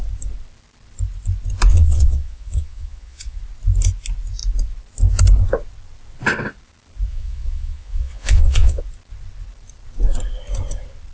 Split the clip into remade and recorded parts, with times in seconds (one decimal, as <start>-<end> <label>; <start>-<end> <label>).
0.0-1.7 recorded; 1.7-3.4 remade; 3.4-7.1 recorded; 7.1-8.8 remade; 8.8-11.1 recorded